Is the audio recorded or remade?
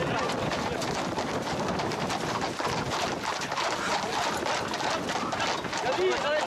recorded